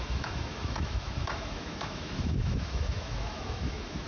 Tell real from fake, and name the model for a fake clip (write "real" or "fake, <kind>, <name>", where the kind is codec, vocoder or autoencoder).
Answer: fake, autoencoder, DAC-VAE